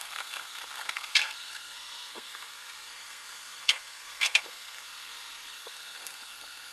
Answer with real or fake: fake